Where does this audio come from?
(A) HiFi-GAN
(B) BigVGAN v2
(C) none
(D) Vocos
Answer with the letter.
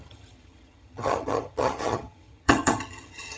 A